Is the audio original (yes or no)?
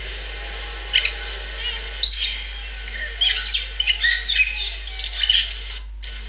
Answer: yes